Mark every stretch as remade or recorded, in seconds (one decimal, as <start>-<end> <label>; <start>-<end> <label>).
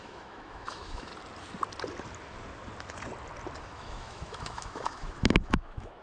0.0-1.1 remade; 1.1-3.6 recorded; 3.6-6.0 remade